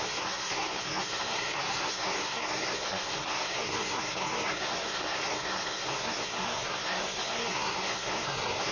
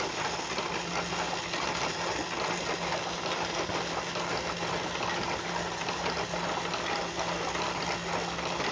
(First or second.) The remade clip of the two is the first